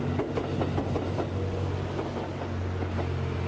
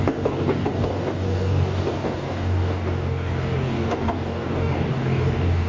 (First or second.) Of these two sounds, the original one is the first